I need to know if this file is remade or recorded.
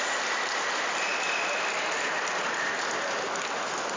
recorded